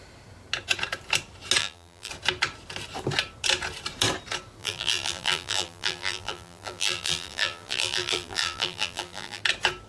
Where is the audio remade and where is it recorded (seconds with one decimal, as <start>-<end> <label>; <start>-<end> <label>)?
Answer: 0.0-1.6 recorded; 1.6-2.1 remade; 2.1-4.6 recorded; 4.6-9.4 remade; 9.4-9.9 recorded